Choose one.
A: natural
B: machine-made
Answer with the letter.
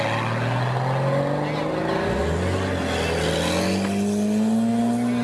A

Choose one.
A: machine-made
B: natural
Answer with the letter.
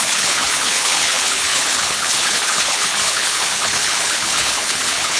A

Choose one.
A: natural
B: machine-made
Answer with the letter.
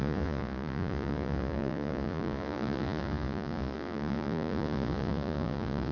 B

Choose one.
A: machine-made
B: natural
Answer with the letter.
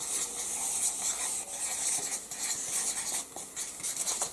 B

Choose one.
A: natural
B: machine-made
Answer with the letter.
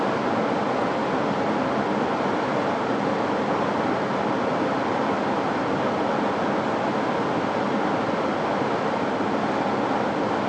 A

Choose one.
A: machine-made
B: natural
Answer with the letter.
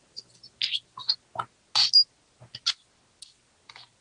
B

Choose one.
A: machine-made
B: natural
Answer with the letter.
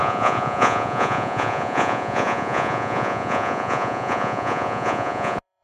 A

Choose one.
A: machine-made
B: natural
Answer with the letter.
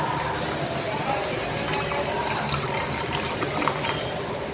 B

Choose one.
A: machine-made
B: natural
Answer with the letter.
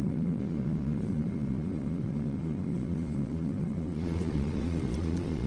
A